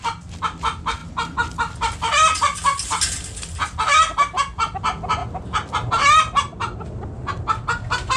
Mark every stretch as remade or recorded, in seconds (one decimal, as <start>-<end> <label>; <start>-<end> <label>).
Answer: 0.0-8.2 recorded